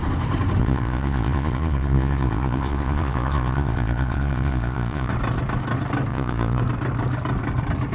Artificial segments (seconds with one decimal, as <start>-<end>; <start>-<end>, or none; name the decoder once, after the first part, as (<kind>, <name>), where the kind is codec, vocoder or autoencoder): 0.6-5.1 (vocoder, Vocos); 6.1-6.6